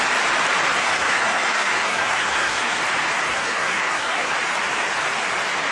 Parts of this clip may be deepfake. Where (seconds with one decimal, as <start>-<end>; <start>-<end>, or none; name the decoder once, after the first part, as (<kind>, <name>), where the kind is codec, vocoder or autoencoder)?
0.8-2.8 (codec, SNAC); 3.3-4.3